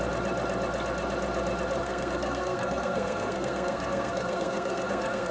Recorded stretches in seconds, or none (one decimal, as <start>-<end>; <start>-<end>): 0.0-1.8